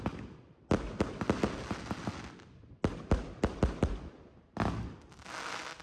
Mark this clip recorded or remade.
recorded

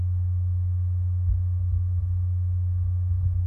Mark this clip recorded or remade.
recorded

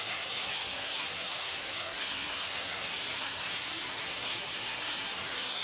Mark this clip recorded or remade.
remade